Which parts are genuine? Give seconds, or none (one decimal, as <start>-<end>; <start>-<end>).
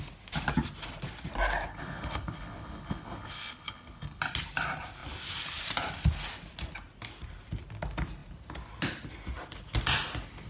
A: 0.0-1.7; 4.2-10.5